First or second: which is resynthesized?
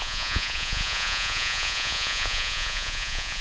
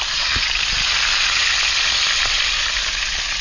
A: first